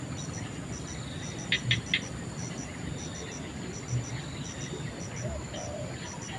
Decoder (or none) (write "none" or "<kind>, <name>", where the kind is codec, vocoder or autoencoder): none